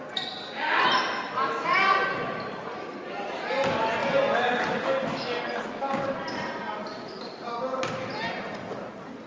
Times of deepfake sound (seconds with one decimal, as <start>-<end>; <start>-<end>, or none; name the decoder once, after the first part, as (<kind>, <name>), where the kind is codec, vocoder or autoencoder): none